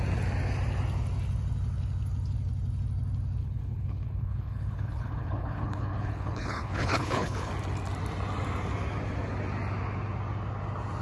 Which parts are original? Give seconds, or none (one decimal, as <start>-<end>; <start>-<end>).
0.0-3.4; 7.5-11.0